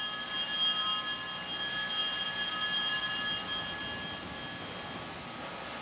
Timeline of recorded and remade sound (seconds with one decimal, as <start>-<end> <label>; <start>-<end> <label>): 0.0-5.8 recorded